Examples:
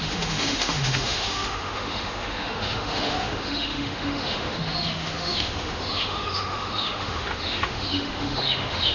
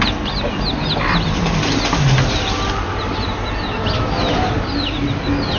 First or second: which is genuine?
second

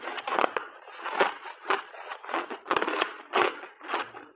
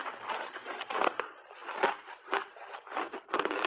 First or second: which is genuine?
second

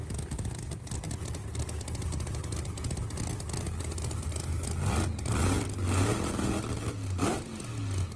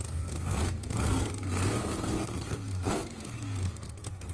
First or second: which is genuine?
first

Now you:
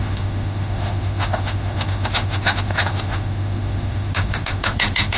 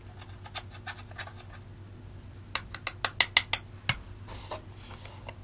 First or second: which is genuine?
second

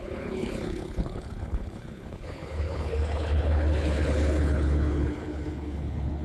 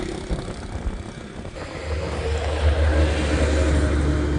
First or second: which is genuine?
second